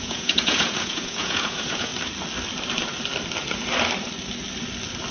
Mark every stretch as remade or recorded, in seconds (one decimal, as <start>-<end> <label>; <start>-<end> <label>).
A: 0.0-1.9 remade; 1.9-5.1 recorded